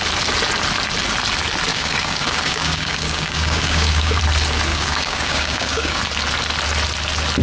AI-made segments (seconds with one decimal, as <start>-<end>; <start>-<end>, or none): 1.7-4.2; 4.7-6.0